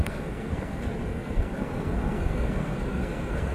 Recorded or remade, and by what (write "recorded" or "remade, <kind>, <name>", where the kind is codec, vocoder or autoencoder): remade, codec, SNAC